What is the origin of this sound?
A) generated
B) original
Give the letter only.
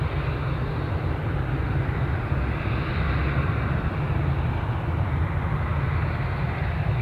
B